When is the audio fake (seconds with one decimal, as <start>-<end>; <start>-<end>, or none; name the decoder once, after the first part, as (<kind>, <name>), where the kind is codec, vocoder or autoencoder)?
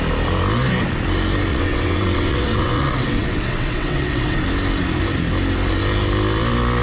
1.5-4.4 (vocoder, WaveNeXt)